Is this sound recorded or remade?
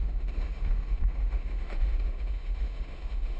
remade